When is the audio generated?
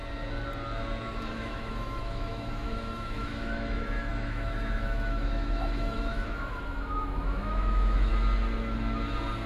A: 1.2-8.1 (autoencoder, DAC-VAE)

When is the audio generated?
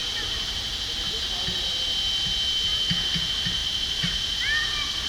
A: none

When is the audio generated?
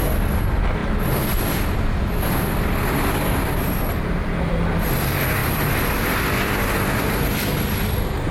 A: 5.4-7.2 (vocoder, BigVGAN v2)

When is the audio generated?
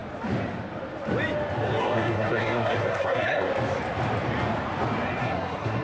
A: 1.8-3.5 (codec, SNAC); 5.2-5.8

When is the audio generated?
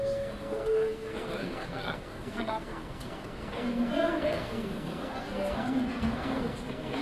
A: 0.0-7.0 (codec, SNAC)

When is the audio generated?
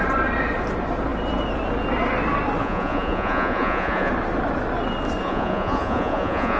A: 2.6-4.1 (vocoder, Vocos); 5.2-6.6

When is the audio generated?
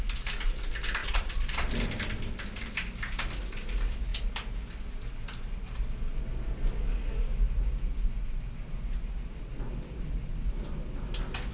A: 1.0-1.7 (vocoder, Vocos)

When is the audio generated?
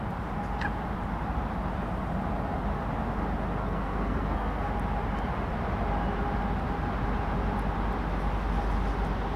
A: 3.6-4.7 (codec, SNAC)